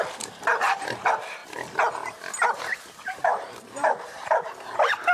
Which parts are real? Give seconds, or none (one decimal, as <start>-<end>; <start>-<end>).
1.4-2.6

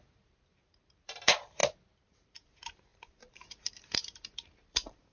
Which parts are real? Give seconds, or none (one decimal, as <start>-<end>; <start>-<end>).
1.6-2.3

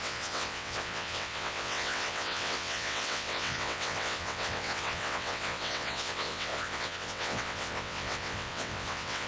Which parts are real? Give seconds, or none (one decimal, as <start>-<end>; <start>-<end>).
none

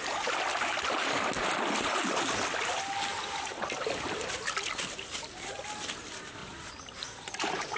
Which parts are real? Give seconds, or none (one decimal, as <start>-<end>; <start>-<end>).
0.0-7.8

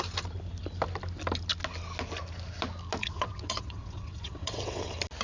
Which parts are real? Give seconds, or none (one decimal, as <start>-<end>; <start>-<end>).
0.0-3.0; 4.8-5.2

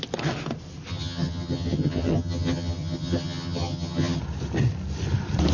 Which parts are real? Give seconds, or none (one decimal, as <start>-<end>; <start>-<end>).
0.0-0.9; 4.2-5.5

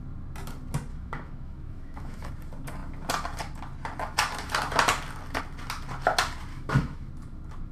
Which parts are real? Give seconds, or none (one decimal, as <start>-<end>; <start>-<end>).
0.0-0.9; 2.3-6.5; 7.1-7.7

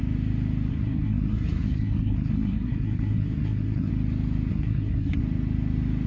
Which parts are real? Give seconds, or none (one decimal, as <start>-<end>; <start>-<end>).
0.0-0.7; 3.9-4.5; 5.2-6.1